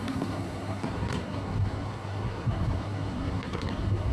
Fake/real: fake